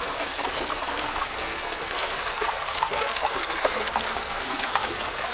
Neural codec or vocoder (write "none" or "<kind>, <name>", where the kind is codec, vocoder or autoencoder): codec, SNAC